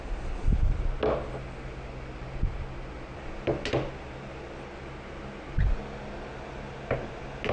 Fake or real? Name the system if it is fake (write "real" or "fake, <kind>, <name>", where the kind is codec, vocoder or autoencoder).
real